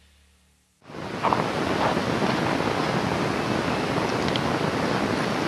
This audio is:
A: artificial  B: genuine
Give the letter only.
B